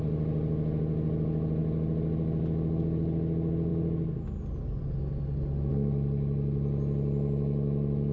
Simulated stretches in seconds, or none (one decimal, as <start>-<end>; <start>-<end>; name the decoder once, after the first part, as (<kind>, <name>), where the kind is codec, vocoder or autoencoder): none

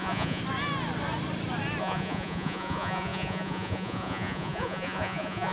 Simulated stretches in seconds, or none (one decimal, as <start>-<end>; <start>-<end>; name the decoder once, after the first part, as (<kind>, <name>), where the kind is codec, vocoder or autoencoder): 0.0-0.4 (vocoder, Vocos); 1.8-5.5